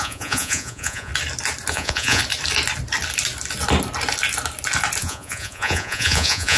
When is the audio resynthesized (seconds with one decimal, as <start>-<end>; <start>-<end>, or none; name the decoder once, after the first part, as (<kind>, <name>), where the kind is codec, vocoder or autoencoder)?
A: 0.0-1.1 (vocoder, Vocos); 1.7-2.2; 5.0-6.6